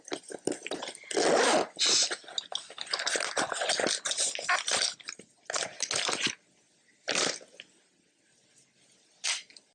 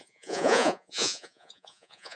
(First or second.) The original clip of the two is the first